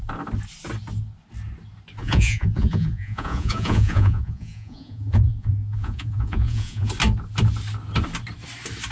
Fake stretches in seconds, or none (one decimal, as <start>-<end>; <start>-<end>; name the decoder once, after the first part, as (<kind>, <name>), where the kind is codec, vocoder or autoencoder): 2.0-6.9 (vocoder, Vocos)

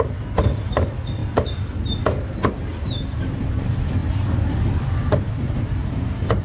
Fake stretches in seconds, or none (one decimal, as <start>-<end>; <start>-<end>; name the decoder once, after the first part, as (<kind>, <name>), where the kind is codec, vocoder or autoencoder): none

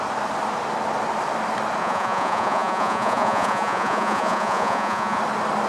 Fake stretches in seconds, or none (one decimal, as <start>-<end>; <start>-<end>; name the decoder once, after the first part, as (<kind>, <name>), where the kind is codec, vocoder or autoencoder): 1.8-5.2 (vocoder, Vocos)

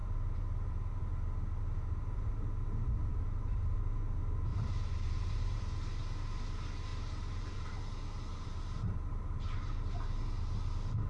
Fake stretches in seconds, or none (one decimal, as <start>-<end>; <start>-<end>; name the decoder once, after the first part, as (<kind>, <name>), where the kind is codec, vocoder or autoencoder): 0.0-1.0 (vocoder, BigVGAN v2); 4.5-5.6; 6.9-7.7; 8.3-9.8

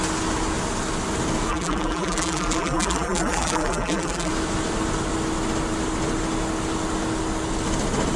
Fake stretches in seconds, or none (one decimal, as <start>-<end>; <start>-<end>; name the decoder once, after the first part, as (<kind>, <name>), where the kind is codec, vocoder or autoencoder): 1.5-4.3 (vocoder, BigVGAN v2)

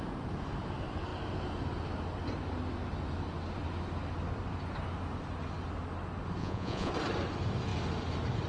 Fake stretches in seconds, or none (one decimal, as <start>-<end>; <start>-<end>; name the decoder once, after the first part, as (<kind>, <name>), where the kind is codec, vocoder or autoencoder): 6.4-6.9 (vocoder, Vocos)